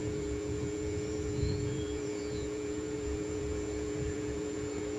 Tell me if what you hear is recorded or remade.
remade